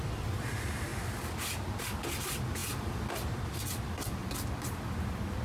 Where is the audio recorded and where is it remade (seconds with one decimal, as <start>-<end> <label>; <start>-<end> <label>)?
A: 0.0-0.9 remade; 0.9-1.8 recorded; 1.8-4.2 remade; 4.2-4.9 recorded; 4.9-5.4 remade